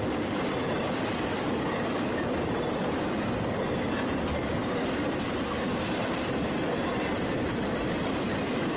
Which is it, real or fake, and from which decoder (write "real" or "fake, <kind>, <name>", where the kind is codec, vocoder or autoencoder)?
fake, vocoder, BigVGAN v2